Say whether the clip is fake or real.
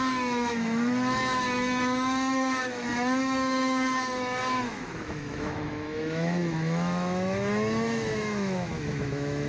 fake